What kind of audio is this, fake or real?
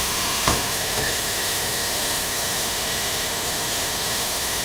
fake